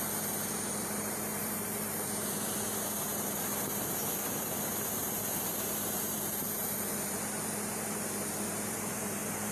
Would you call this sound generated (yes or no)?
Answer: yes